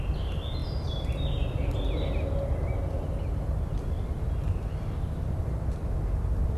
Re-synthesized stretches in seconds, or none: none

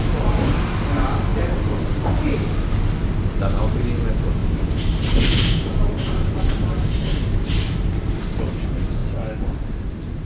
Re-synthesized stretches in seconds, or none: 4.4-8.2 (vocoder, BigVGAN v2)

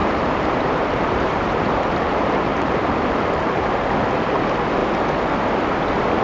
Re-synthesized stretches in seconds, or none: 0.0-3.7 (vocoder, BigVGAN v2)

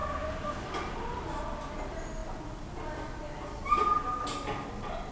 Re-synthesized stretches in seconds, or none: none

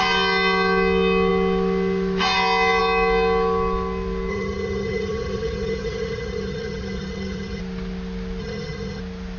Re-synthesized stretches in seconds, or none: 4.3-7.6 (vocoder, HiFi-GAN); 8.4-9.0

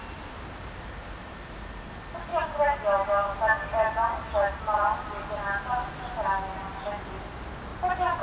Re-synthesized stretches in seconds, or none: none

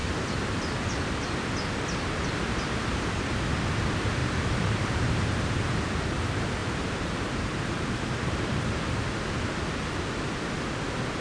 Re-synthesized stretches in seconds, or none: 0.0-0.8 (vocoder, BigVGAN v2); 4.2-5.4; 6.6-8.8

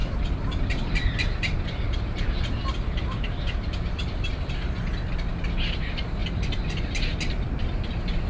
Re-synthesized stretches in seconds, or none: 0.0-4.5 (vocoder, BigVGAN v2); 6.2-7.9